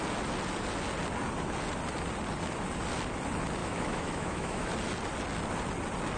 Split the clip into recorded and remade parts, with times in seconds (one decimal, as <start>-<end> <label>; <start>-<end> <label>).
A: 0.0-3.6 recorded; 3.6-4.7 remade; 4.7-6.2 recorded